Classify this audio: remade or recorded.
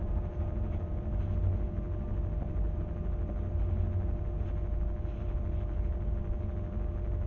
recorded